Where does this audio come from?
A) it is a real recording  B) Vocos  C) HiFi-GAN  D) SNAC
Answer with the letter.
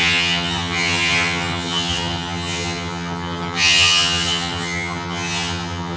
C